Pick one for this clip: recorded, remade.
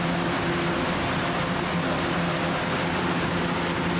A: recorded